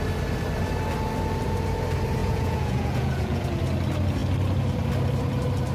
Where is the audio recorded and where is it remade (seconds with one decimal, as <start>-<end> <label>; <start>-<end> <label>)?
0.0-2.2 recorded; 2.2-3.6 remade; 3.6-5.7 recorded